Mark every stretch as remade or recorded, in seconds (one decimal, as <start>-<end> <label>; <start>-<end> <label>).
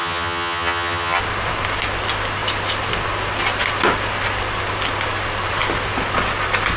0.0-1.2 remade; 1.2-6.8 recorded